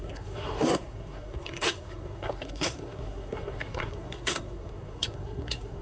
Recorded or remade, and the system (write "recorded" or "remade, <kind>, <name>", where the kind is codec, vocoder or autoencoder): remade, codec, SNAC